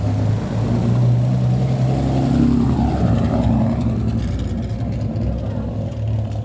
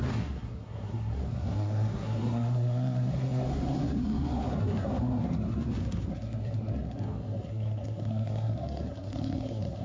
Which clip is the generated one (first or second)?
second